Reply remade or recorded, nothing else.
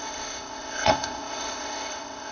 remade